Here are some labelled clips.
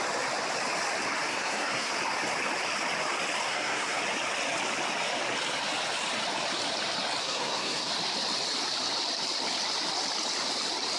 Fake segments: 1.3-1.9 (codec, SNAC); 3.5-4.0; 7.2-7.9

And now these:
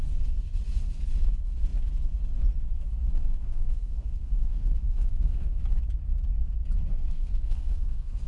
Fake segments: 3.3-5.6 (codec, SNAC); 6.9-8.3